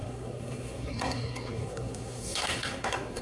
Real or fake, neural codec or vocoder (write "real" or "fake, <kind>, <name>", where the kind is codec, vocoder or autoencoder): fake, codec, SNAC